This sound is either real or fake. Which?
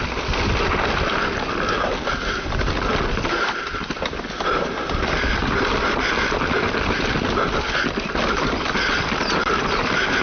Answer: real